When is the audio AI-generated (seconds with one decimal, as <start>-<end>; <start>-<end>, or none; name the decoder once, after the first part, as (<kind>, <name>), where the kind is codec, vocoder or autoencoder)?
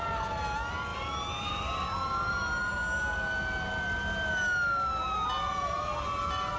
none